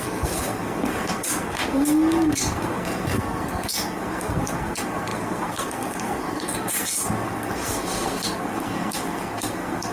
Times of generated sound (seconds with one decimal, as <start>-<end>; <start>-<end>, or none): 0.0-9.9